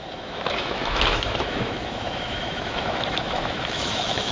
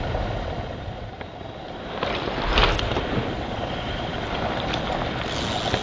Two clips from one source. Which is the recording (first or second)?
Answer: second